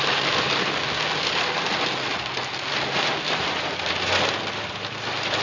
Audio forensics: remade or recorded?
recorded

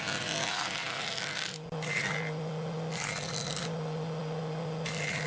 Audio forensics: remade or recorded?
recorded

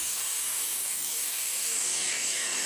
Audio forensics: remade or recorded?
remade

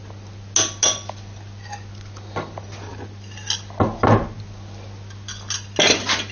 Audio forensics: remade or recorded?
recorded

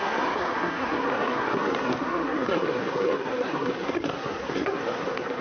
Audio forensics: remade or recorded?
remade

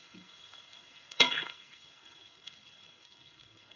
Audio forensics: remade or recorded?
remade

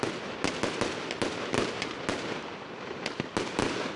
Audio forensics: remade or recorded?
recorded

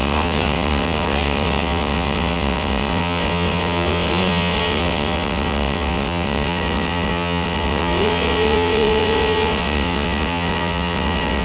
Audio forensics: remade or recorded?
remade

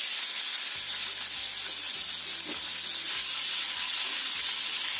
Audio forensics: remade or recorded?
recorded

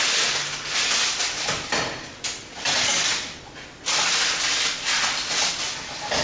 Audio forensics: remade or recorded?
recorded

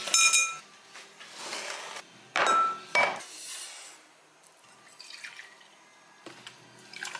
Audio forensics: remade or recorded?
recorded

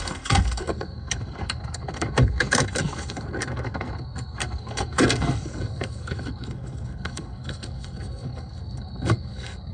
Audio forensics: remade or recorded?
remade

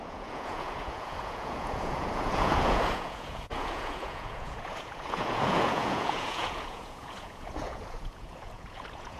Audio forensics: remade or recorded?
remade